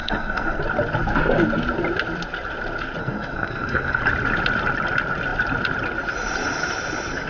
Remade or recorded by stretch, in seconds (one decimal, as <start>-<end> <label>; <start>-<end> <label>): 0.0-0.6 remade; 0.6-3.0 recorded; 3.0-4.0 remade; 4.0-7.3 recorded